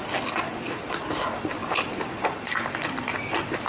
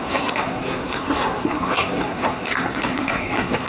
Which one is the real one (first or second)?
first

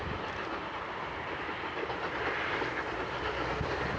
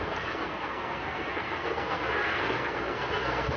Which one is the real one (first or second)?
first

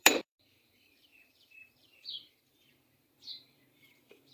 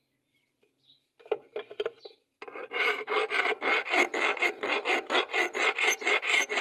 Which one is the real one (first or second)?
second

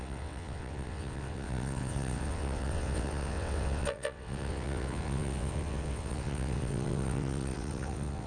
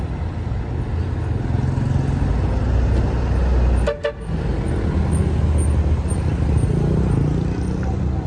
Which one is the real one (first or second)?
second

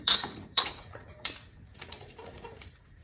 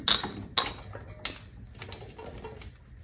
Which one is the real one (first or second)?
second